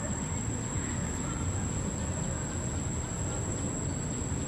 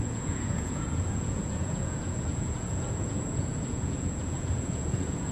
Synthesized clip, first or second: second